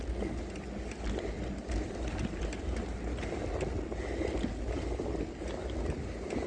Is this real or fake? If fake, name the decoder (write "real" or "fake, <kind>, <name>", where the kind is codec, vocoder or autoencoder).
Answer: real